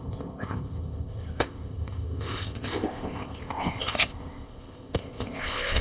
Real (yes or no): no